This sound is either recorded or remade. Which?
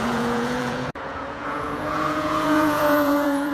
remade